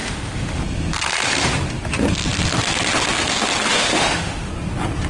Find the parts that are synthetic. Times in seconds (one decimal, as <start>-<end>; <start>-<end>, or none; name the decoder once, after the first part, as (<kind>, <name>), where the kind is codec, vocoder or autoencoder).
0.0-0.6 (autoencoder, DAC-VAE); 3.7-4.5